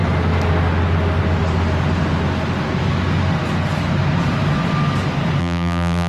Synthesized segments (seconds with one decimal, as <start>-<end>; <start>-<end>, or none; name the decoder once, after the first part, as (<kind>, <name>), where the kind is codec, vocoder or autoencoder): 5.4-6.1 (vocoder, BigVGAN v2)